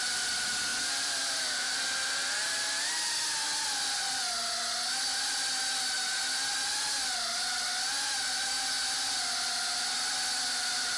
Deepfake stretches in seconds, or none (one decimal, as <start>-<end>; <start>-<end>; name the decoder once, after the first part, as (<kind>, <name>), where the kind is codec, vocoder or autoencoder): 0.7-2.5 (vocoder, BigVGAN v2)